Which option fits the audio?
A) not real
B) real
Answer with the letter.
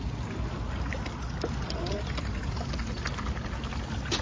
B